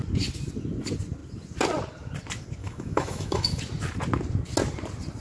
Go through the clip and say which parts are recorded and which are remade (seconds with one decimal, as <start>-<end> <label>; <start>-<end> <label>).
0.0-2.6 recorded; 2.6-3.6 remade; 3.6-5.2 recorded